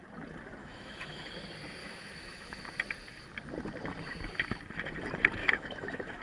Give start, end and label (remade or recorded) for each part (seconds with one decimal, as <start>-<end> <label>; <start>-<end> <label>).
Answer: 0.0-0.6 recorded; 0.6-1.3 remade; 1.3-1.8 recorded; 1.8-2.6 remade; 2.6-5.4 recorded; 5.4-6.2 remade